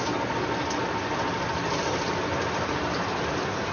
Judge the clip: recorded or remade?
recorded